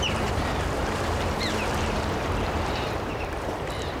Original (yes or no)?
no